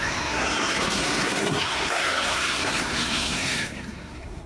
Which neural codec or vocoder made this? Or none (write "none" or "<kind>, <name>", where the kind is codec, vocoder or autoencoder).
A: codec, SNAC